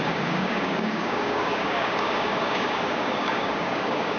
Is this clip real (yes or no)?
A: no